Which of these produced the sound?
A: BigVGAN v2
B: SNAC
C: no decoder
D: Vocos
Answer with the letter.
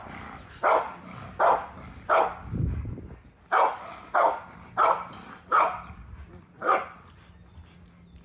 C